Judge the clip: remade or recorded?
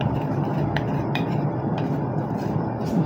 remade